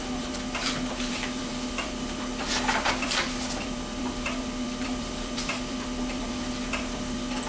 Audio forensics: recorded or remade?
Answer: remade